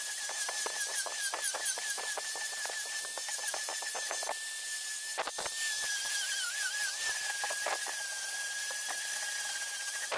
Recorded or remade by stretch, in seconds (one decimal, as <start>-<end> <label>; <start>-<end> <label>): 0.0-3.7 remade; 3.7-6.0 recorded; 6.0-10.2 remade